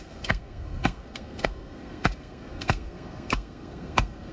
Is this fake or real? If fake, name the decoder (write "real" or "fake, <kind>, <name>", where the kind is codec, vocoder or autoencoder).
fake, codec, SNAC